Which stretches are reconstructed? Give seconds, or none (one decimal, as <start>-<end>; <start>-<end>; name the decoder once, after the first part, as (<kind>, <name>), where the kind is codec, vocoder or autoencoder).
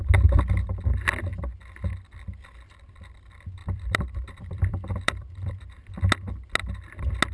3.6-5.9 (vocoder, BigVGAN v2)